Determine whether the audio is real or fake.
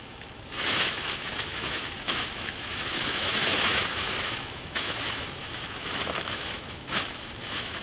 fake